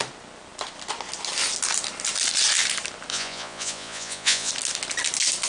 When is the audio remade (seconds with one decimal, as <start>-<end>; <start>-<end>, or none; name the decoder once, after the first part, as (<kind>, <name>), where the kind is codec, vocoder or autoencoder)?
3.1-4.5 (vocoder, Vocos)